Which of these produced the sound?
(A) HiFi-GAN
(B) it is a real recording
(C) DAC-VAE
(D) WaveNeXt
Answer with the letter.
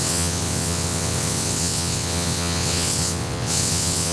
D